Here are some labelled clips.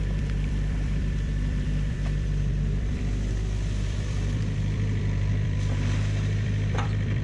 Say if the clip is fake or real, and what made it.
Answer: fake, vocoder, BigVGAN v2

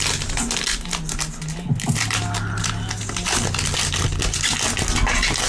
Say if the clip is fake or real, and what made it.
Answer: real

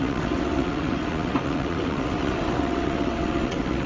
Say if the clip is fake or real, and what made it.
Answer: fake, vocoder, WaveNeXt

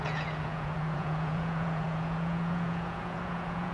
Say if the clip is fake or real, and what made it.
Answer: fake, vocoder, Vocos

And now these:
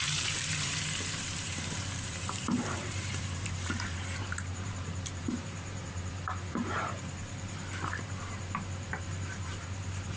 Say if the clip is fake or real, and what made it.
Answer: fake, vocoder, BigVGAN v2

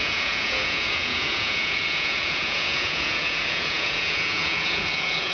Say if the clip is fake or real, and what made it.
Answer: fake, vocoder, Vocos